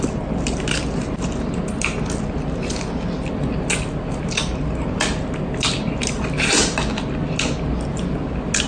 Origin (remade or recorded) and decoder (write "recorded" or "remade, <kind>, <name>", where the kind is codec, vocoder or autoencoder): recorded